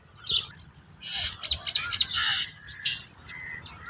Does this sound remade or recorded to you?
recorded